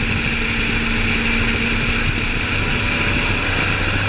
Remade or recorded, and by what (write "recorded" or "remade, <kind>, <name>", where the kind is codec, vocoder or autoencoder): recorded